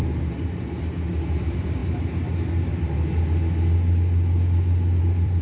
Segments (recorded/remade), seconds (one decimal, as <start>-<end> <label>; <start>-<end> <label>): 0.0-1.8 remade; 1.8-5.0 recorded; 5.0-5.4 remade